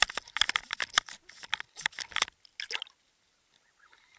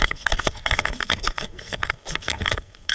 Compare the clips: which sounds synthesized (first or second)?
second